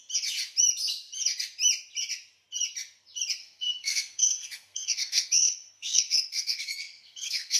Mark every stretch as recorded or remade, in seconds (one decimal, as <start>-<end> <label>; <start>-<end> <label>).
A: 0.0-3.4 recorded; 3.4-7.6 remade